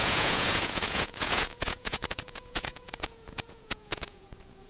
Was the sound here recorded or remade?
remade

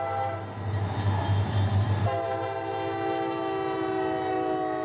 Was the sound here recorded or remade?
recorded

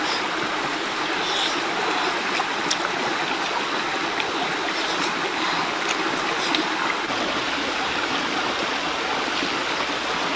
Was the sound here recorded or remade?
recorded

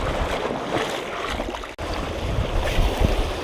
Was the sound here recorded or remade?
recorded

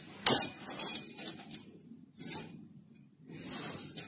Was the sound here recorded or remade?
recorded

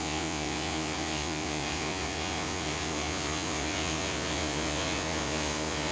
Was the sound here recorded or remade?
remade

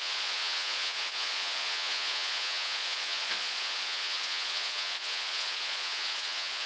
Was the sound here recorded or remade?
remade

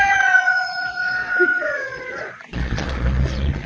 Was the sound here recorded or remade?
remade